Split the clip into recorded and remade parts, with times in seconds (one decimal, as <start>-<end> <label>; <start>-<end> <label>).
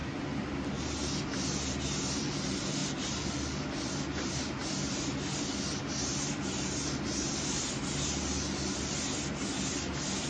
0.0-10.3 recorded